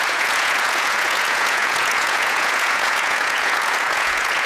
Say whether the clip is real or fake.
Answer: fake